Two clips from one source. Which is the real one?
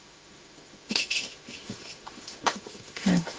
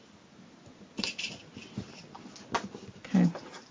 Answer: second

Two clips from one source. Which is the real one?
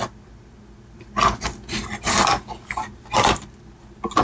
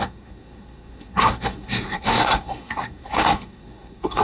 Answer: first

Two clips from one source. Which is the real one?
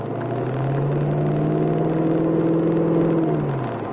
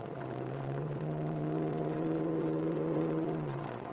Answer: first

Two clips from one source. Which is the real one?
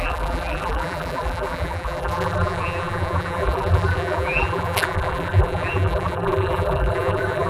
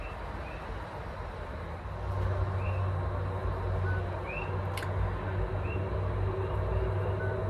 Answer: second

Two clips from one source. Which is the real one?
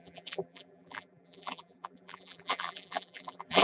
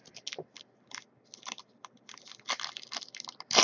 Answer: second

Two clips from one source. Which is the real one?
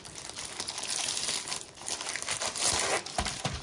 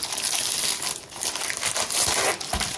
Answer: second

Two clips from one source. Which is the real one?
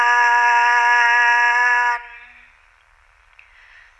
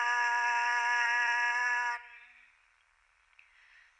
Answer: first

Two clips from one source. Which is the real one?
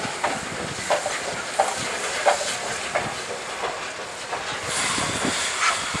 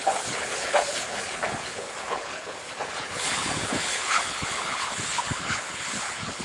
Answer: first